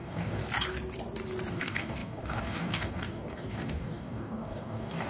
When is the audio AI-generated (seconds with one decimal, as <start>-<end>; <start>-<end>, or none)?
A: 0.0-0.4; 1.5-5.1